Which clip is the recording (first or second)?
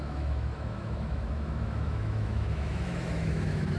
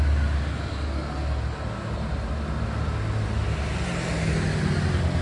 second